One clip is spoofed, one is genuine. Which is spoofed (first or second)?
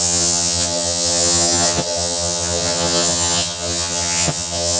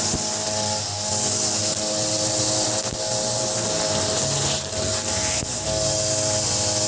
first